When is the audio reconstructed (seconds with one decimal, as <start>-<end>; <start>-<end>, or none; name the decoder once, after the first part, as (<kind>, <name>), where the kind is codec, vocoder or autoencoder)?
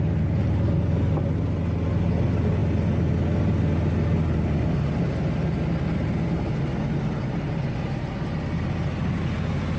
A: none